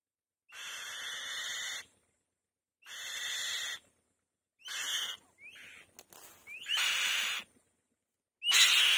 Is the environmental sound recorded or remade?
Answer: recorded